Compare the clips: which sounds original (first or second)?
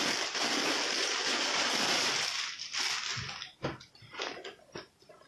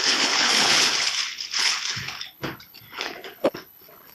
first